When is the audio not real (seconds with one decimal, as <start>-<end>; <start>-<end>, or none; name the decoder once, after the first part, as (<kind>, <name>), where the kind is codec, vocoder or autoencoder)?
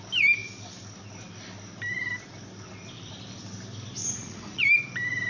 4.0-4.6 (vocoder, Vocos)